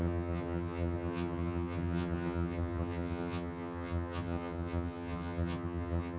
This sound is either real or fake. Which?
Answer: fake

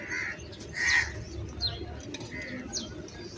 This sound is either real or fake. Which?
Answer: real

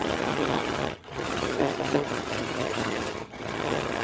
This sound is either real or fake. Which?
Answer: fake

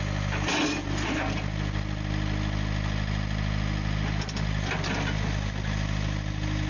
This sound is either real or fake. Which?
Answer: real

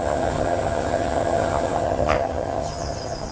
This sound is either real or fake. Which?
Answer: fake